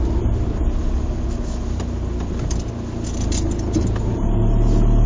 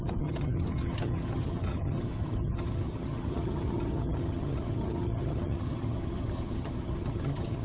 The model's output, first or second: second